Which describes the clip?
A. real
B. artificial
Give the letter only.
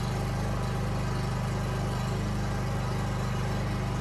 A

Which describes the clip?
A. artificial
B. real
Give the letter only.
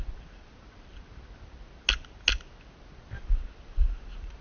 B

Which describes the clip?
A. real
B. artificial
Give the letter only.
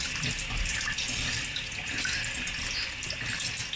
A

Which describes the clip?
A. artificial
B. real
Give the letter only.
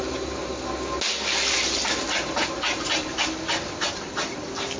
B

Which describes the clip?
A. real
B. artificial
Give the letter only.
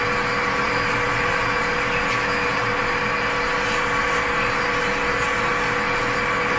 A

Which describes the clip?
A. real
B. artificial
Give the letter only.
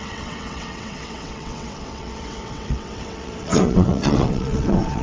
B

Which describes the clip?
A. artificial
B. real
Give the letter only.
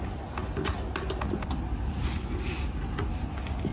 B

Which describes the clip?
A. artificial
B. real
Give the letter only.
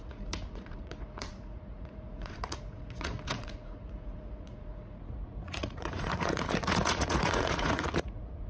A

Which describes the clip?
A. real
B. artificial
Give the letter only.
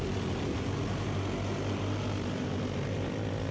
A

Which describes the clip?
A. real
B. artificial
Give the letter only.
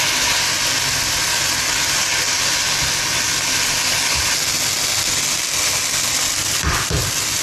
A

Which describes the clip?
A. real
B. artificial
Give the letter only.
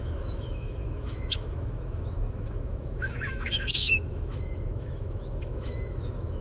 B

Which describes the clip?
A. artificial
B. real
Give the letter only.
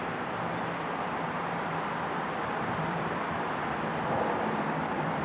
A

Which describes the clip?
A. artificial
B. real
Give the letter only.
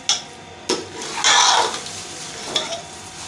B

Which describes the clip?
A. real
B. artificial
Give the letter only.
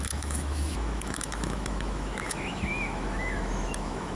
B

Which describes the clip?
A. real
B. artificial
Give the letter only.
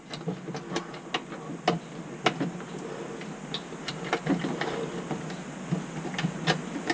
A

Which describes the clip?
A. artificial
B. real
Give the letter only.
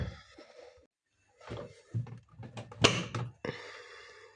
B